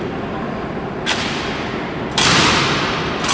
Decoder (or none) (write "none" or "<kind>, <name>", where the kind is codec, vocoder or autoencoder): none